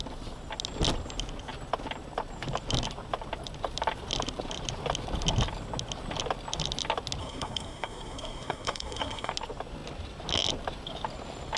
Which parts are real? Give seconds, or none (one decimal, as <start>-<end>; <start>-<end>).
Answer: 0.0-7.2; 9.3-11.6